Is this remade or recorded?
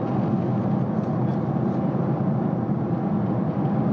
recorded